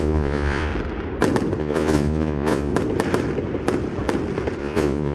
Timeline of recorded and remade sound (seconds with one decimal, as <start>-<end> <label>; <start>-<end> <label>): 0.0-0.7 remade; 0.7-1.6 recorded; 1.6-2.7 remade; 2.7-4.6 recorded; 4.6-5.1 remade